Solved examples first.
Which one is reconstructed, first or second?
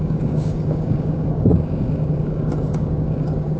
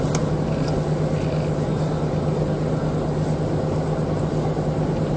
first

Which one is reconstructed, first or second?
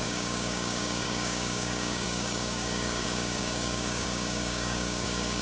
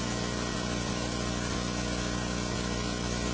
first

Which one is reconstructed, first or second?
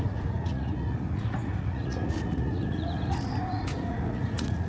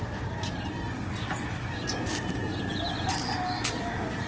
first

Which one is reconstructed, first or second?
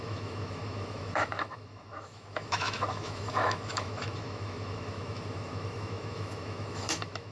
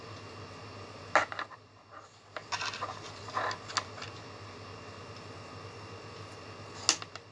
first